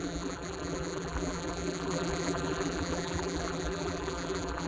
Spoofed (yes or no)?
yes